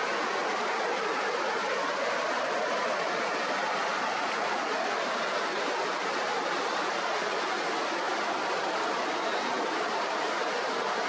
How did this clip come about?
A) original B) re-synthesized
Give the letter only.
A